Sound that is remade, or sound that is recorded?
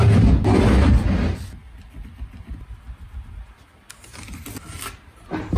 recorded